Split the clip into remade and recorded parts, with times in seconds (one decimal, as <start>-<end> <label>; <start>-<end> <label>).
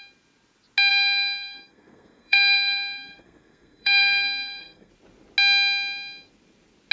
0.0-0.9 recorded; 0.9-4.9 remade; 4.9-6.9 recorded